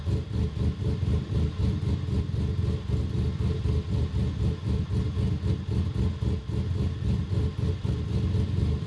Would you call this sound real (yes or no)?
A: yes